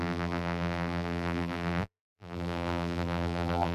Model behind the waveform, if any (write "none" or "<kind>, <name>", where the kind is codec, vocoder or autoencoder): vocoder, BigVGAN v2